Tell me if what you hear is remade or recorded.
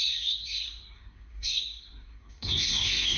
remade